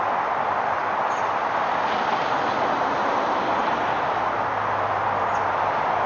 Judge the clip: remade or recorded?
recorded